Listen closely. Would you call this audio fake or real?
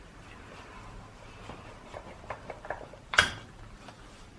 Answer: fake